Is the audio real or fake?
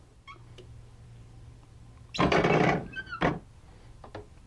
real